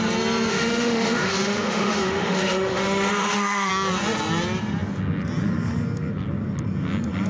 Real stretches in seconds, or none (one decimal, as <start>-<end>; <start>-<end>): 0.0-0.5; 3.7-7.3